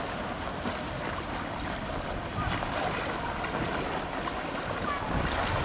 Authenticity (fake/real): real